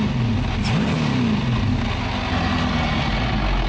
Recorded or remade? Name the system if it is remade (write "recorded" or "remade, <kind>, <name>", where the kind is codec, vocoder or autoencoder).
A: recorded